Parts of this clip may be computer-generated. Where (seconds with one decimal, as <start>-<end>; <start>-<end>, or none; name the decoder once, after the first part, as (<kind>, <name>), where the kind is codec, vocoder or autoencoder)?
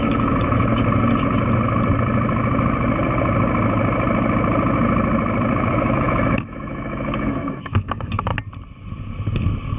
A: 0.0-0.7 (autoencoder, DAC-VAE); 5.7-8.3